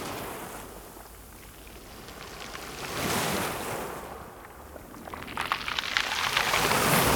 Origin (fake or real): real